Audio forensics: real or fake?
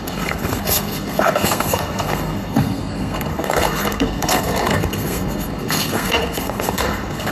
fake